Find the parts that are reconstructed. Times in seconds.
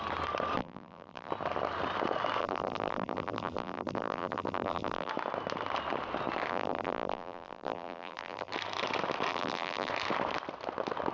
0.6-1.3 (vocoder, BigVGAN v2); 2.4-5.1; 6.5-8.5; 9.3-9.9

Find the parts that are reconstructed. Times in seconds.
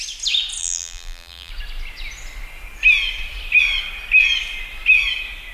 0.6-1.5 (vocoder, BigVGAN v2)